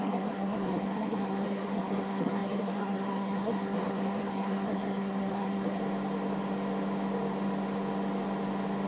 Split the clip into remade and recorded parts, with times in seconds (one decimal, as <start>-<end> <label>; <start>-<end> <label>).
0.0-5.8 remade; 5.8-8.9 recorded